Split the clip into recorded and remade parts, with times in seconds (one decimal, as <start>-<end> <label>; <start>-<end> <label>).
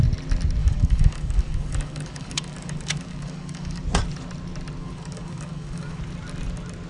0.0-0.6 recorded; 0.6-3.8 remade; 3.8-4.8 recorded; 4.8-6.0 remade; 6.0-6.9 recorded